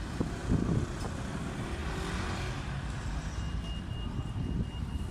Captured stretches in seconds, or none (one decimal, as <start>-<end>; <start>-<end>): 0.0-5.1